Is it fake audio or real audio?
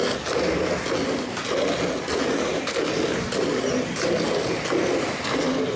real